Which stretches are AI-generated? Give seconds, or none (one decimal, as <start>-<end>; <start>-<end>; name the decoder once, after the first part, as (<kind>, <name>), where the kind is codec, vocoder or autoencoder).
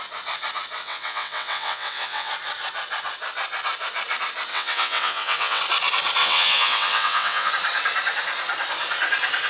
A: 0.8-2.3 (vocoder, WaveNeXt); 4.5-5.6; 6.2-7.5